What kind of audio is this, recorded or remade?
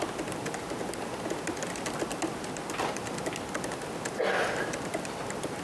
recorded